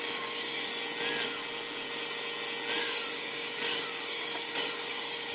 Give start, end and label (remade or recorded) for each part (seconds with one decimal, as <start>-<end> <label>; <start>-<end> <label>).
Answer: 0.0-0.7 remade; 0.7-2.8 recorded; 2.8-5.3 remade